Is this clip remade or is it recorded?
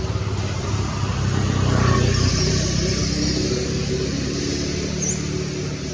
recorded